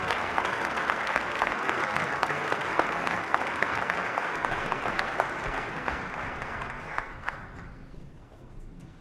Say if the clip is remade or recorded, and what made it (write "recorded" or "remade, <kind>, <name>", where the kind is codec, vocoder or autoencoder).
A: remade, codec, SNAC